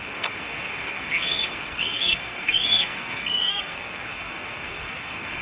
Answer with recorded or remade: remade